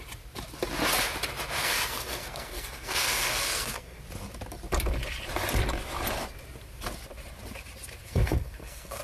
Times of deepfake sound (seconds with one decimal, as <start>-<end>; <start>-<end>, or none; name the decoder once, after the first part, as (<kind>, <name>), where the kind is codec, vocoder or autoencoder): 1.6-4.0 (codec, SNAC); 8.0-9.0